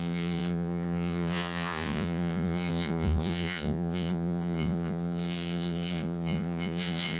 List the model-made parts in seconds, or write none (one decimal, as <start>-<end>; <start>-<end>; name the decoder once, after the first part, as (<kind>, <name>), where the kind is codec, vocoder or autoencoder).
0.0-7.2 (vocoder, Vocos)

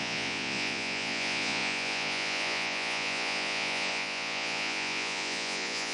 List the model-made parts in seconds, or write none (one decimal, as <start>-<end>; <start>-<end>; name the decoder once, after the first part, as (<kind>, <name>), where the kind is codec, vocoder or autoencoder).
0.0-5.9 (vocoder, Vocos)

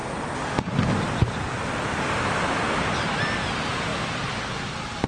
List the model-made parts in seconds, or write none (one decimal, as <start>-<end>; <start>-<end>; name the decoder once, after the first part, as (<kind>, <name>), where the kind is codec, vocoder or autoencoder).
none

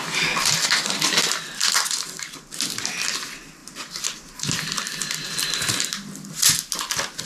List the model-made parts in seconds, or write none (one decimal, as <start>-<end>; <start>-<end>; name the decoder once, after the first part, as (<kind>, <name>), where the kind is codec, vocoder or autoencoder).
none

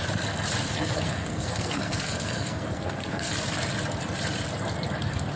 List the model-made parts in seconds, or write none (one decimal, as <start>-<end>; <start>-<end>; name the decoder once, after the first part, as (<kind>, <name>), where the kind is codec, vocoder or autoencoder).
0.7-3.3 (codec, SNAC)

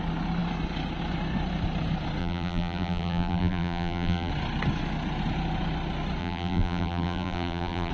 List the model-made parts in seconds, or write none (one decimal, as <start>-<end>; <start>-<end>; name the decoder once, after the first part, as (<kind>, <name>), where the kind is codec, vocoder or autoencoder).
2.2-4.3 (vocoder, BigVGAN v2); 6.2-7.9